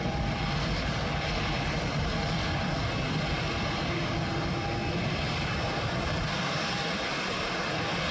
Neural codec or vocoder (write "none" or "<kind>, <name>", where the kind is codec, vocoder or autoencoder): vocoder, BigVGAN v2